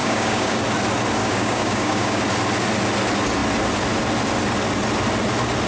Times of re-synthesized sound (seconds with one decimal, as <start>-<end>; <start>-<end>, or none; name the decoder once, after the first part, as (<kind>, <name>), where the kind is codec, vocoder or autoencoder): 0.0-0.6 (codec, DAC); 1.2-2.2